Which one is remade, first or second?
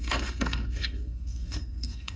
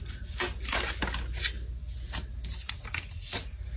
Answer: first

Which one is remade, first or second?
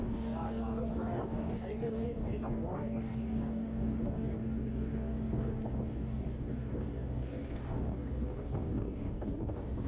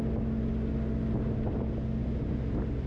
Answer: first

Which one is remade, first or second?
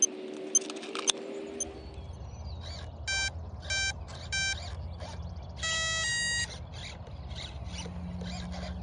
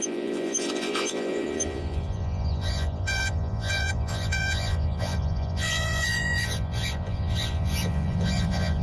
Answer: second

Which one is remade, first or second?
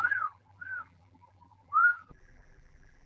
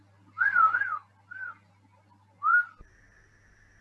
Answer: first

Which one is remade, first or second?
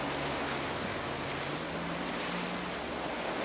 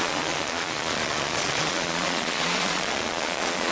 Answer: second